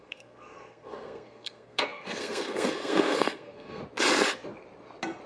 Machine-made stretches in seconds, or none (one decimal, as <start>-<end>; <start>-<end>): 0.0-3.8